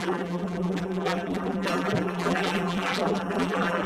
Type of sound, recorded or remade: remade